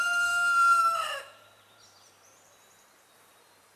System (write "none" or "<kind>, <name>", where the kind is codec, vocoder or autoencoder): vocoder, BigVGAN v2